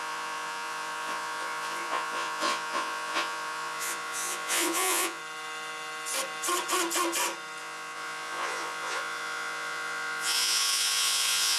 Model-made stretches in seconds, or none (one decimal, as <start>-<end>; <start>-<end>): 0.0-5.2; 7.6-11.6